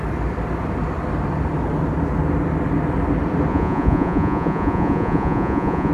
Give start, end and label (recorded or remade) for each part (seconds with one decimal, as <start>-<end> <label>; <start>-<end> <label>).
0.0-3.5 recorded; 3.5-5.9 remade